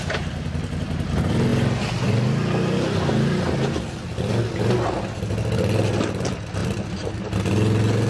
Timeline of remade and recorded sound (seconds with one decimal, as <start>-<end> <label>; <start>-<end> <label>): 0.0-8.1 recorded